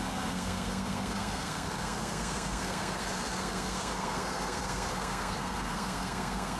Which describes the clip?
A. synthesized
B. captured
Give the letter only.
A